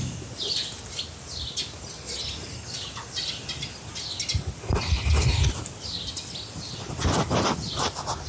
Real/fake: real